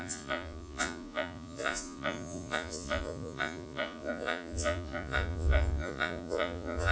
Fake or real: fake